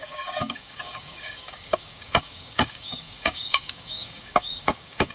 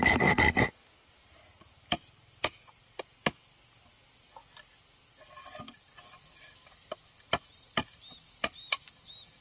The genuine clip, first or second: second